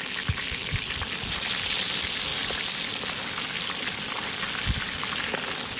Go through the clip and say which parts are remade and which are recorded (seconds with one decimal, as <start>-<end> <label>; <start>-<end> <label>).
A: 0.0-5.8 recorded